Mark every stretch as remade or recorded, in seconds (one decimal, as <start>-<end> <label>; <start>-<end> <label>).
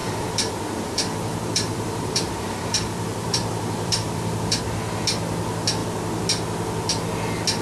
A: 0.0-4.6 remade; 4.6-7.6 recorded